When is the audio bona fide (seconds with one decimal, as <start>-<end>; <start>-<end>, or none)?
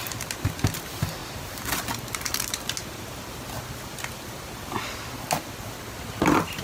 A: 0.0-6.6